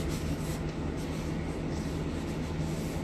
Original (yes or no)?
yes